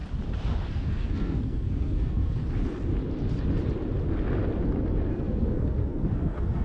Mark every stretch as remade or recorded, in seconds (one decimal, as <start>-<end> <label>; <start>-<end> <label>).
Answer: 0.0-0.7 recorded; 0.7-2.4 remade; 2.4-5.1 recorded; 5.1-6.6 remade